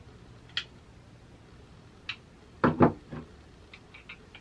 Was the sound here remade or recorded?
recorded